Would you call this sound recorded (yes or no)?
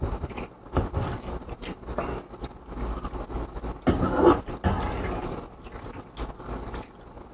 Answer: yes